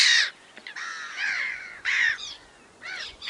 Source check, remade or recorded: remade